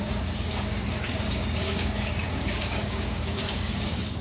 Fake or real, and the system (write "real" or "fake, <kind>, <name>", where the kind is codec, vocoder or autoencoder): fake, codec, DAC